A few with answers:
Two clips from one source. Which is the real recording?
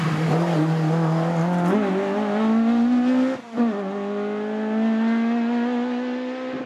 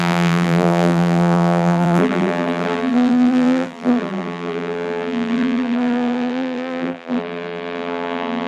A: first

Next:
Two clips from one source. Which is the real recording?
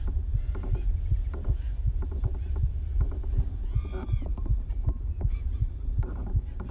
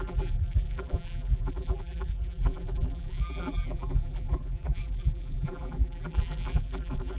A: first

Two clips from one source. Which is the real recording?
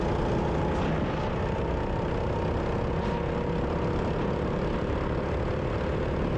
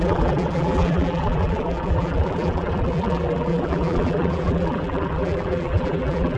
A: first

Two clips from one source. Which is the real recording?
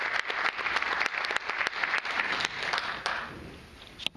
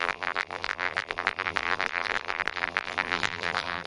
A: first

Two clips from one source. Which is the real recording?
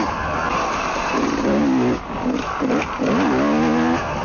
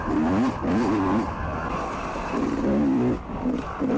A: first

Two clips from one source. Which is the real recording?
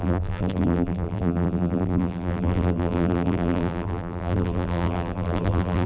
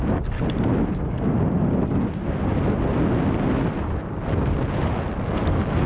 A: second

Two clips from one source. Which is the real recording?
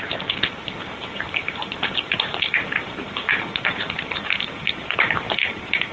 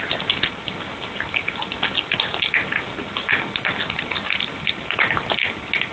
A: second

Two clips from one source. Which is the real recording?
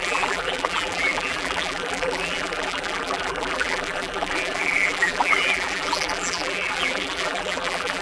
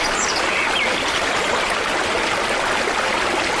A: second